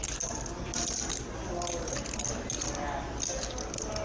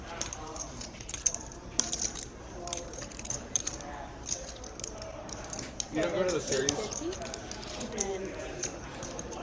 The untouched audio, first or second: first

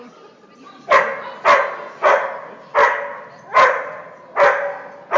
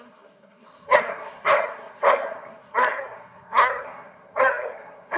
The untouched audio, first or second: first